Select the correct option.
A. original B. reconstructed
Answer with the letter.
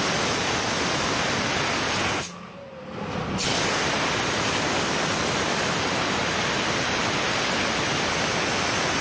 A